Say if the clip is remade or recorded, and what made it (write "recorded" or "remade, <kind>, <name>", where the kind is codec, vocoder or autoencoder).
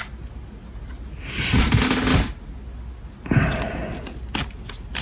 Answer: recorded